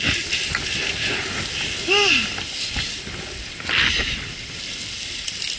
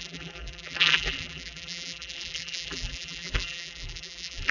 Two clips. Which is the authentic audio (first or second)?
first